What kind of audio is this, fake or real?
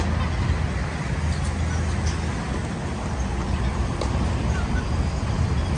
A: real